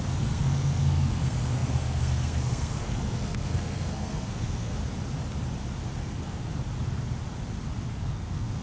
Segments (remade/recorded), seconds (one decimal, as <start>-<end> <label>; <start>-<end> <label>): 0.0-4.8 remade; 4.8-6.0 recorded; 6.0-6.5 remade; 6.5-7.9 recorded; 7.9-8.6 remade